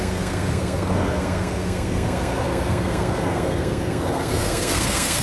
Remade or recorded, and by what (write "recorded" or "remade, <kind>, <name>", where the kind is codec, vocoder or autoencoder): remade, codec, SNAC